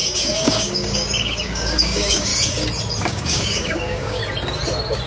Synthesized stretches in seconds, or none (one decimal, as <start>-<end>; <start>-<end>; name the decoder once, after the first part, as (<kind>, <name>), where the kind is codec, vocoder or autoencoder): 0.0-2.3 (codec, DAC); 3.0-4.2